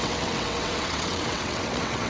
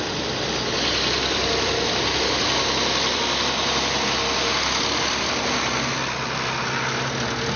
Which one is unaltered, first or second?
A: second